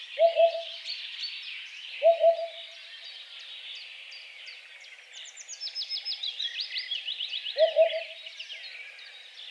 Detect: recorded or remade recorded